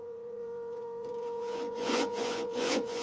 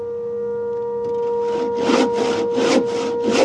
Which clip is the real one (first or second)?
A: second